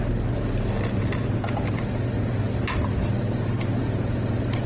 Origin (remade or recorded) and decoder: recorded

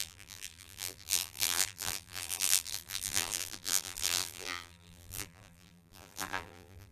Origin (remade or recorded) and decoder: remade, vocoder, BigVGAN v2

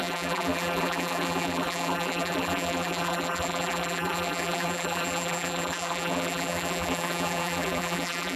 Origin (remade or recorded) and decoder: remade, vocoder, BigVGAN v2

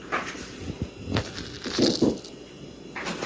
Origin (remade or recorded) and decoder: recorded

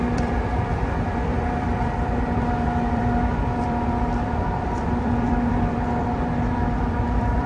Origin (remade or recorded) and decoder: remade, vocoder, BigVGAN v2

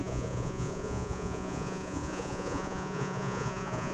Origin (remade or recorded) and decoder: remade, vocoder, Vocos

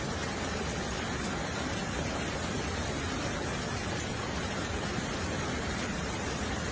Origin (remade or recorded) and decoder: recorded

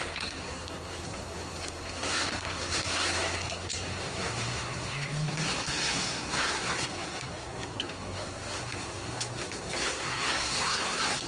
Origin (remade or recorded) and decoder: remade, codec, SNAC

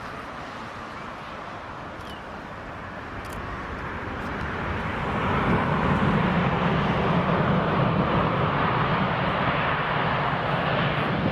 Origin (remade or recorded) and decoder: remade, vocoder, BigVGAN v2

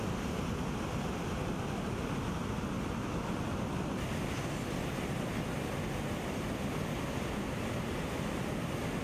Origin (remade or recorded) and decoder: recorded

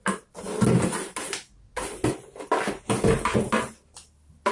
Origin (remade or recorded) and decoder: recorded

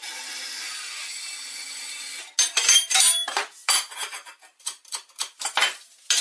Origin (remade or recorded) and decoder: recorded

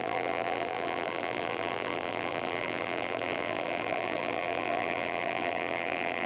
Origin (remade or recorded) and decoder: remade, vocoder, BigVGAN v2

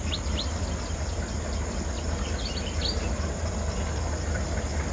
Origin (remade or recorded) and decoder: recorded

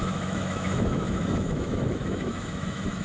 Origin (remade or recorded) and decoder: remade, autoencoder, DAC-VAE